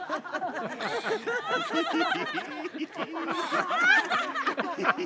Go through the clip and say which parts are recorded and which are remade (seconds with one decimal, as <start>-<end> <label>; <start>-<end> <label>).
0.0-5.1 recorded